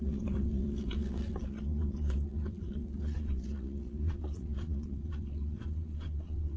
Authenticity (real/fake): fake